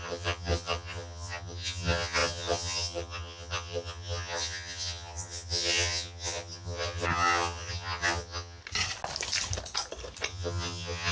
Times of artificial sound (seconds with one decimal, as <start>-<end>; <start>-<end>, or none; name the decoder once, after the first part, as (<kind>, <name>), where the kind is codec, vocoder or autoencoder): 0.0-8.6 (vocoder, HiFi-GAN); 10.3-11.1